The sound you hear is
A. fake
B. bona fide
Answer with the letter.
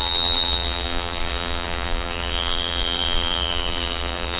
A